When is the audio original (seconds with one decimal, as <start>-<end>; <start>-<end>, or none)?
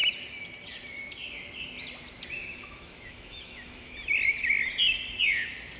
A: 0.0-2.4; 3.9-5.8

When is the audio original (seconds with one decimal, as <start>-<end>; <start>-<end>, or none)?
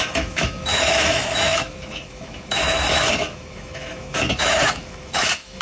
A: none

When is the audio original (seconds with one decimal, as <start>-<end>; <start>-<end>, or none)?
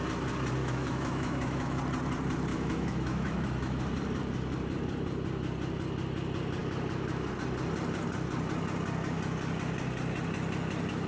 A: 0.0-0.6; 1.8-2.5; 3.8-11.1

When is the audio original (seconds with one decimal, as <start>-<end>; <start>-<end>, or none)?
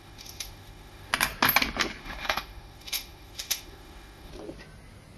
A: 1.1-2.0; 4.3-5.2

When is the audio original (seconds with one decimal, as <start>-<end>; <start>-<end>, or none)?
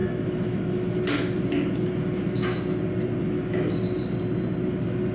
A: 0.9-3.2; 3.8-5.1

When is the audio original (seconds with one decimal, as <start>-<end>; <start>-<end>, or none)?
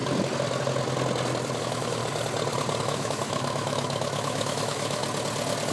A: 0.0-1.6; 2.0-2.8; 5.0-5.7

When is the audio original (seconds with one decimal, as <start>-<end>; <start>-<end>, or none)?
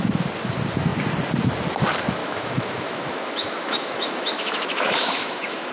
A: 0.0-2.2